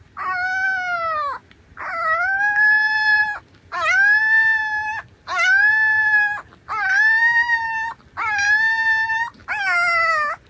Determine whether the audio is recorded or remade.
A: recorded